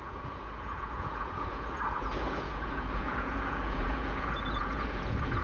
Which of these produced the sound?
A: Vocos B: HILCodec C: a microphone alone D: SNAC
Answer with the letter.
A